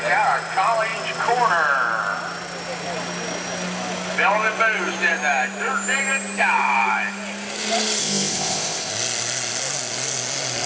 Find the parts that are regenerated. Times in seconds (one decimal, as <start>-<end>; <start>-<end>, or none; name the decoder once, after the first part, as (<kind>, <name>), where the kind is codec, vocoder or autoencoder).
8.0-8.9 (codec, ZipCodec)